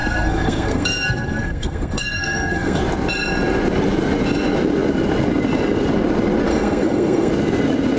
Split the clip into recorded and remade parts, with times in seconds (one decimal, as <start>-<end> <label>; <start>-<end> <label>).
0.0-2.8 remade; 2.8-6.5 recorded; 6.5-7.3 remade; 7.3-8.0 recorded